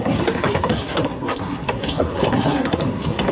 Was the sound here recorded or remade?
remade